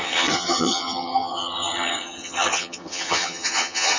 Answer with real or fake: fake